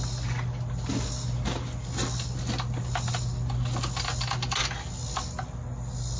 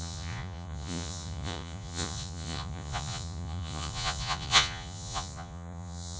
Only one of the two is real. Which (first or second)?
first